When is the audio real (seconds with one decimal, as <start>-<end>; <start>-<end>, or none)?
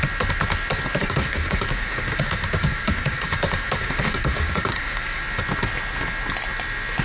0.0-1.0; 5.2-7.0